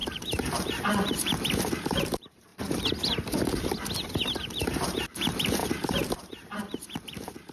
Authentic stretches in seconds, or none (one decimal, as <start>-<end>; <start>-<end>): 2.5-4.0